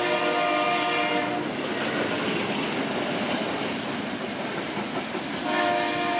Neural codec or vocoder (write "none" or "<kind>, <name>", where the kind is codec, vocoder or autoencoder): none